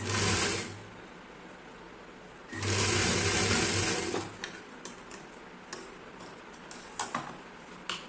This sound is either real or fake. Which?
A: real